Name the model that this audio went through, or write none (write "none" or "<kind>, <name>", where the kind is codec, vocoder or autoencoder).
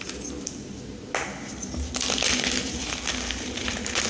none